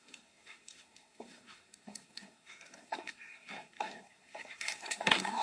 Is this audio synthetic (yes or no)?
yes